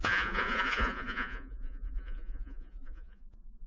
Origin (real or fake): fake